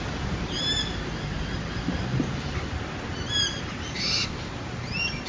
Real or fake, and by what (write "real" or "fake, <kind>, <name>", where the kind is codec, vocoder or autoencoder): real